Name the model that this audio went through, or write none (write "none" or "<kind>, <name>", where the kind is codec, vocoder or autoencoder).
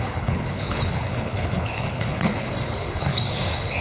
codec, HILCodec